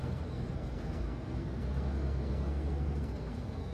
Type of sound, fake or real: fake